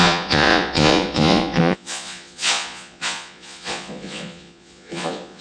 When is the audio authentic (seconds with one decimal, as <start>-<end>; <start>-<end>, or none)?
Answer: none

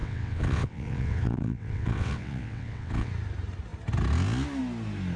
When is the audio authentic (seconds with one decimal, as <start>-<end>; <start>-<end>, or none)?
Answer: 3.1-5.2

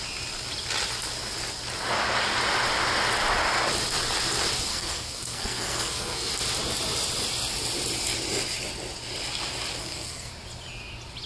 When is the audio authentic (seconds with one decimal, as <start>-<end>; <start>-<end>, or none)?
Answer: 0.0-4.7; 6.3-9.8; 10.3-11.3

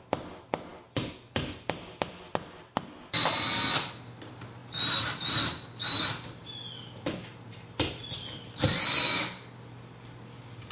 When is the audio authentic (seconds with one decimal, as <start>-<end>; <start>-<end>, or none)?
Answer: 0.0-10.7

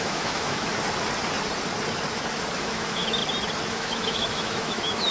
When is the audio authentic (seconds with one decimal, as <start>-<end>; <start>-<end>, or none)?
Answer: 0.7-2.6; 3.2-3.7

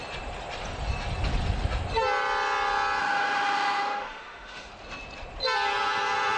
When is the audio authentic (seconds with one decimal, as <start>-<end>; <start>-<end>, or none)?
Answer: 0.0-3.0; 4.7-6.4